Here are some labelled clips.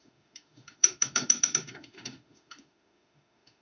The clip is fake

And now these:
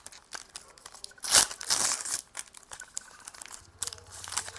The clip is real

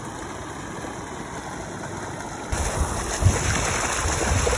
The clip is real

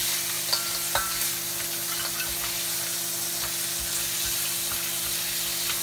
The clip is real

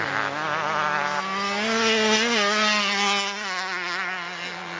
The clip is real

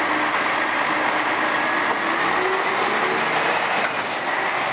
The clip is real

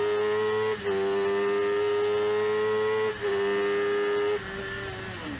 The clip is real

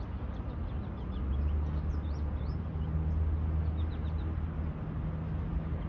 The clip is real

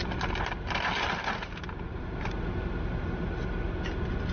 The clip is real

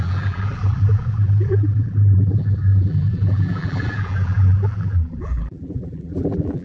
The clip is fake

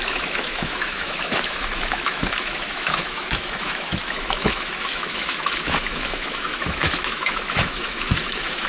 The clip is fake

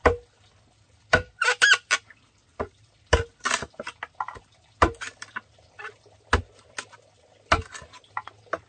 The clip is real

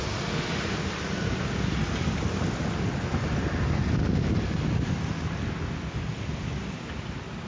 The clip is real